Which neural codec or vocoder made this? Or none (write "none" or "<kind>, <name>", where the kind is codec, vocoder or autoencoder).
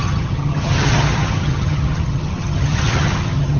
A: vocoder, HiFi-GAN